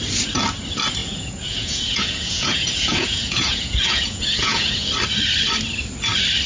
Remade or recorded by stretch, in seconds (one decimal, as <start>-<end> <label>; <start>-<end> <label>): 0.0-1.0 recorded; 1.0-4.9 remade; 4.9-6.5 recorded